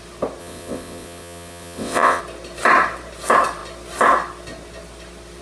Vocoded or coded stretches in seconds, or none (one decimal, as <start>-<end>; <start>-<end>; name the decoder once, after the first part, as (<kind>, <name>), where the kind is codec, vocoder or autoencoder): 0.4-2.2 (vocoder, WaveNeXt)